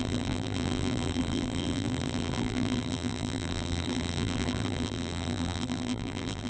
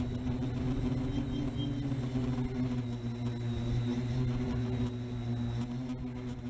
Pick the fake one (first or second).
first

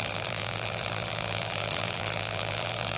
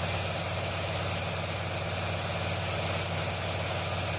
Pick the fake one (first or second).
first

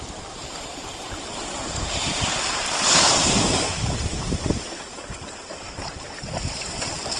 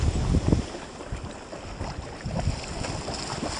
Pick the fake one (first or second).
first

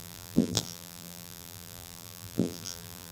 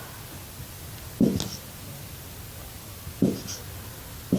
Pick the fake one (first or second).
first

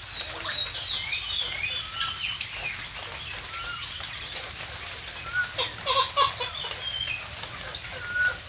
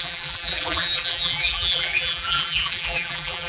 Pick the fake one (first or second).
second